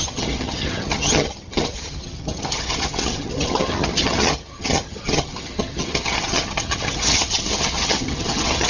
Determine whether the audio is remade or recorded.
remade